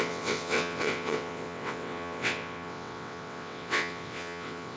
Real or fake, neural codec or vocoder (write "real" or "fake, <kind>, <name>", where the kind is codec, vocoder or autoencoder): fake, vocoder, WaveNeXt